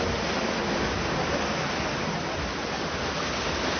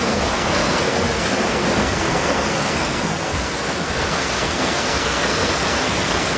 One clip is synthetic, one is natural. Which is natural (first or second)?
first